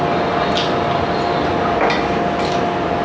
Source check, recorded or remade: recorded